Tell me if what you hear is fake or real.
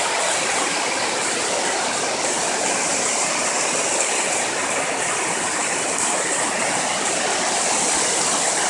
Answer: real